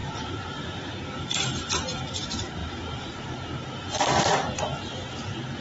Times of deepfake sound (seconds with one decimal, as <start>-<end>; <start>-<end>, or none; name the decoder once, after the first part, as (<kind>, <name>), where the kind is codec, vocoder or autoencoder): 0.0-0.9 (vocoder, BigVGAN v2); 2.6-3.3